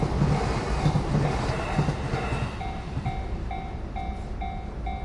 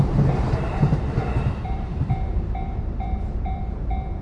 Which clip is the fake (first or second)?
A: second